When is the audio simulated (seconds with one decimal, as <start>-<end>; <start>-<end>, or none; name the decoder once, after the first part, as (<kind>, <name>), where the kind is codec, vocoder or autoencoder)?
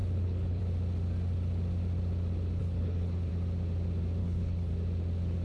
0.0-0.6 (codec, HILCodec); 2.6-3.3; 4.2-4.7